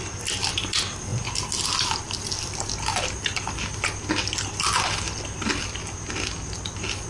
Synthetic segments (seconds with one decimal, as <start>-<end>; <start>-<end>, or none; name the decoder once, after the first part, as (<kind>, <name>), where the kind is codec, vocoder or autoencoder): none